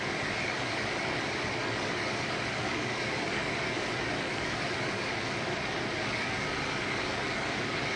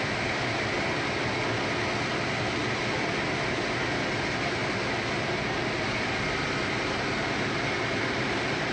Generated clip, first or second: first